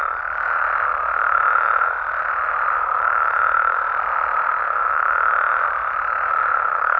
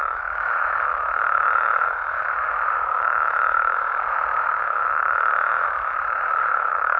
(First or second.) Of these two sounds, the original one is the first